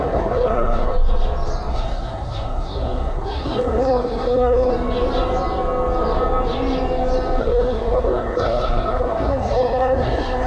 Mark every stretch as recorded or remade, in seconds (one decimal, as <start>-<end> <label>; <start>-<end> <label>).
0.0-0.9 remade; 0.9-1.7 recorded; 1.7-4.7 remade; 4.7-7.4 recorded; 7.4-10.5 remade